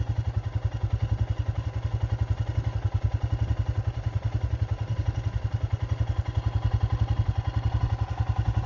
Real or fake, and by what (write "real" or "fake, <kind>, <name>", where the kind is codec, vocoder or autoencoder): real